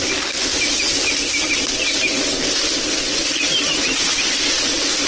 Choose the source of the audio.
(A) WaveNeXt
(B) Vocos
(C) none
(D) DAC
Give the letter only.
C